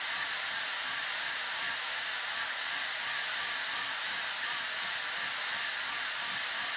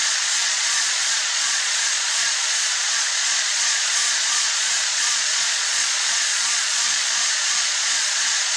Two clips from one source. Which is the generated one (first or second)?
second